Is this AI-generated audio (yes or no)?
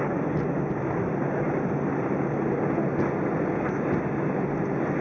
no